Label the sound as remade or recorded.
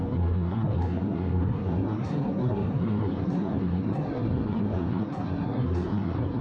remade